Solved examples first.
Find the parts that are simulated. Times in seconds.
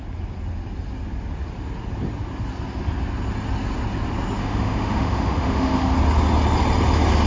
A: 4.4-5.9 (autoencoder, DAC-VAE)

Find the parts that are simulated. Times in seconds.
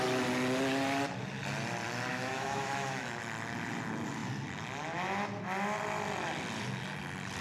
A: 2.1-3.2 (autoencoder, DAC-VAE)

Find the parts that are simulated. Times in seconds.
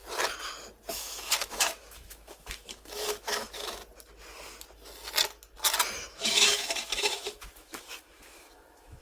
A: 0.9-3.8 (autoencoder, DAC-VAE); 6.1-9.0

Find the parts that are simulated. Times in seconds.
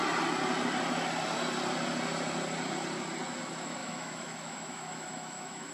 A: 3.8-5.7 (autoencoder, DAC-VAE)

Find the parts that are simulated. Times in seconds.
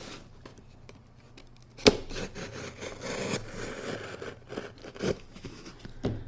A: 4.8-5.7 (autoencoder, DAC-VAE)